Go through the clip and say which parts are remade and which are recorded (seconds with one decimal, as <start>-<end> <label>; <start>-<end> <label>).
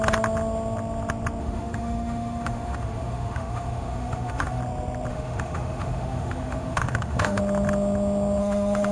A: 0.0-1.4 recorded; 1.4-4.6 remade; 4.6-5.1 recorded; 5.1-7.4 remade; 7.4-8.4 recorded; 8.4-8.9 remade